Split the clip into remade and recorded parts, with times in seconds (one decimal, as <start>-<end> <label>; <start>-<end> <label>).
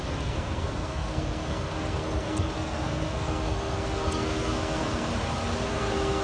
0.0-5.1 remade; 5.1-5.7 recorded; 5.7-6.2 remade